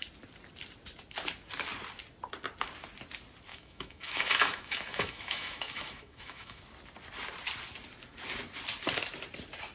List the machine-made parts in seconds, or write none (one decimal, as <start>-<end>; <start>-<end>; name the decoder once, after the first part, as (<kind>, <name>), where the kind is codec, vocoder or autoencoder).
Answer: 3.5-6.6 (autoencoder, DAC-VAE)